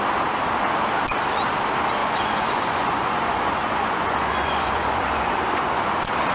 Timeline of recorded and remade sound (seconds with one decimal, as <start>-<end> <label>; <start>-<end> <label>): 0.0-2.0 recorded; 2.0-5.8 remade; 5.8-6.3 recorded